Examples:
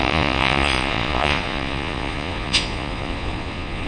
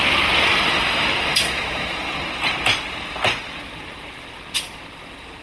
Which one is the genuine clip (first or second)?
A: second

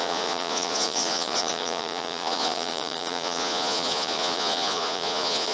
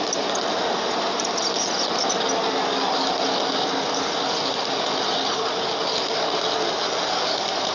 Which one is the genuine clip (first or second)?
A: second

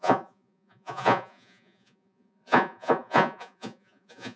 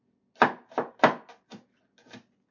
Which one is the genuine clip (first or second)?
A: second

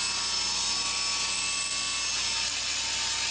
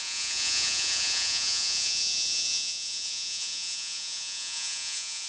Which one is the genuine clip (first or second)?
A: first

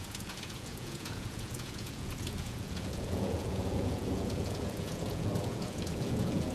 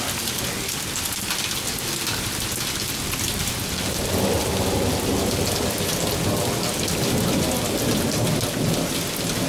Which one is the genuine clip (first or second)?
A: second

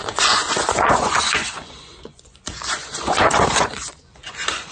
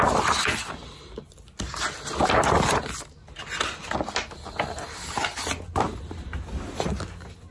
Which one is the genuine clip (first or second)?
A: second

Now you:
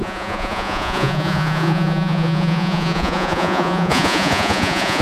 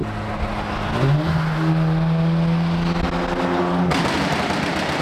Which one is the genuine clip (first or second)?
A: second